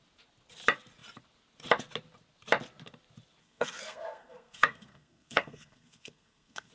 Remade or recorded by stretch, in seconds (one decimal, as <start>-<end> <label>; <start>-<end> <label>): 0.0-3.4 recorded; 3.4-6.7 remade